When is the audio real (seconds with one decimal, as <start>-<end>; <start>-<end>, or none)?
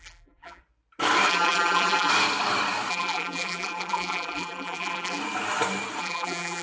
0.6-1.3; 2.1-2.9; 5.2-6.0